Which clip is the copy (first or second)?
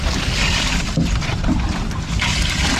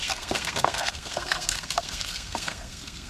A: second